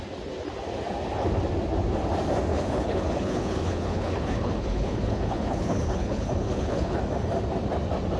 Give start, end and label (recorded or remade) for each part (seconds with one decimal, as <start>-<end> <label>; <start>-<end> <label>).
0.0-2.5 recorded; 2.5-7.0 remade; 7.0-8.2 recorded

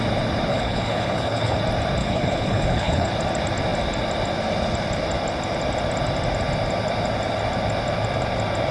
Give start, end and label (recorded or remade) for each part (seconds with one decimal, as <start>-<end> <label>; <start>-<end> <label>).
0.0-0.5 recorded; 0.5-1.6 remade; 1.6-2.0 recorded; 2.0-3.1 remade; 3.1-8.7 recorded

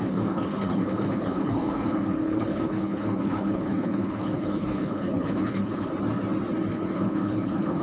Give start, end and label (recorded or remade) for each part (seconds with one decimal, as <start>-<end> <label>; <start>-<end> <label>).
0.0-5.9 remade; 5.9-6.7 recorded; 6.7-7.8 remade

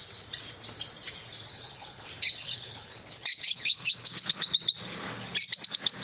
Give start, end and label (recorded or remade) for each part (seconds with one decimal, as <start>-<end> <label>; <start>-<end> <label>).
0.0-1.5 recorded; 1.5-4.5 remade; 4.5-6.0 recorded

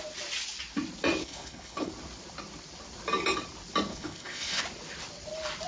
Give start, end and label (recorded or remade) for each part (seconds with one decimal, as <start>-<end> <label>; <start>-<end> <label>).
0.0-1.2 recorded; 1.2-1.9 remade; 1.9-3.9 recorded; 3.9-4.6 remade; 4.6-5.7 recorded

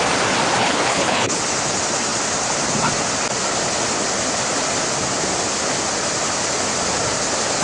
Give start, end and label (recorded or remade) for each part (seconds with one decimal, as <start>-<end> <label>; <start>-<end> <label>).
0.0-0.6 recorded; 0.6-1.4 remade; 1.4-7.6 recorded